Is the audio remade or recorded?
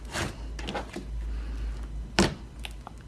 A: recorded